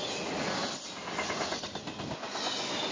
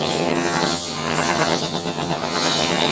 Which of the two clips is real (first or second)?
first